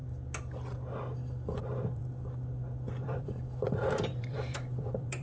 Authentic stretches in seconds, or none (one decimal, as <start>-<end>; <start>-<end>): 0.0-1.6; 2.0-2.9